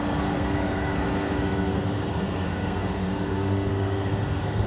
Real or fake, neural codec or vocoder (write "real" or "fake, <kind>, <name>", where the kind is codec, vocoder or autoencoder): fake, codec, SNAC